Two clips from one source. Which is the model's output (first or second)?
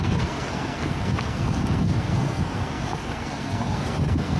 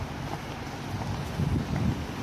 first